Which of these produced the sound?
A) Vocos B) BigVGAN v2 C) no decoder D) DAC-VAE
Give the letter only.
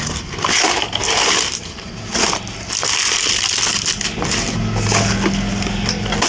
C